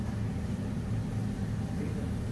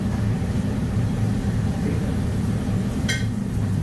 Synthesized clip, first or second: second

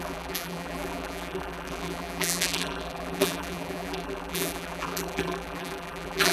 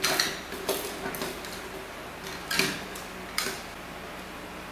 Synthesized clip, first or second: first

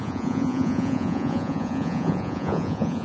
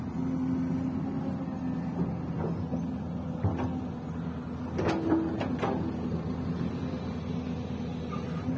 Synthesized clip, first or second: first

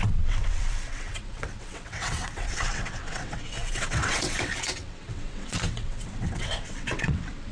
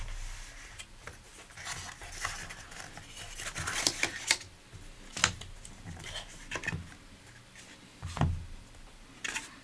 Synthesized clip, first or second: first